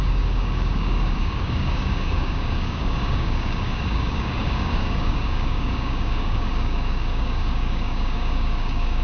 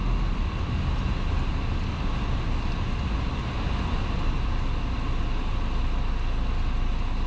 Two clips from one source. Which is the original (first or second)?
second